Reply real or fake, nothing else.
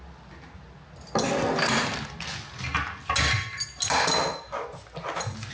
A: real